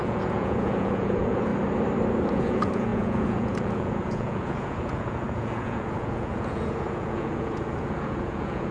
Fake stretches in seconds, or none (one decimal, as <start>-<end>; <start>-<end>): 0.0-1.5; 2.3-8.7